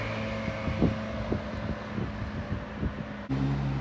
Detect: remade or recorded recorded